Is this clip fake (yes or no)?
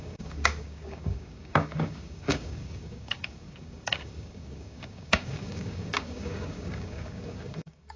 yes